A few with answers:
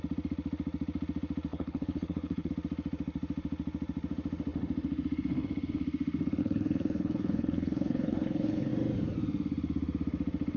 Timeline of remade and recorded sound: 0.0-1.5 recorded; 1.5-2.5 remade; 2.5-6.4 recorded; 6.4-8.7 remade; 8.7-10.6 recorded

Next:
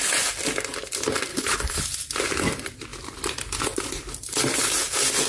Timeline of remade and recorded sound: 0.0-1.3 recorded; 1.3-1.8 remade; 1.8-5.3 recorded

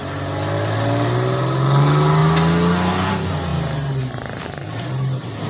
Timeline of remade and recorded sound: 0.0-5.5 recorded

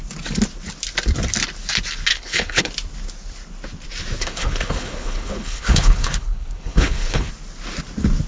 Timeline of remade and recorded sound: 0.0-2.1 recorded; 2.1-2.7 remade; 2.7-4.2 recorded; 4.2-7.3 remade; 7.3-8.3 recorded

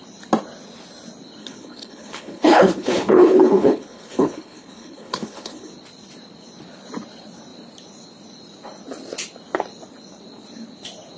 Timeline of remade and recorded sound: 0.0-1.4 recorded; 1.4-5.7 remade; 5.7-11.2 recorded

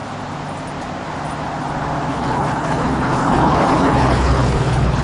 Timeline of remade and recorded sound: 0.0-2.1 recorded; 2.1-5.0 remade